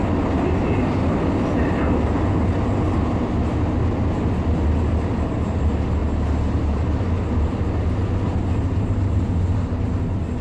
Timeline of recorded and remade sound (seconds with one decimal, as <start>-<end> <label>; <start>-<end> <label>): 0.0-10.4 recorded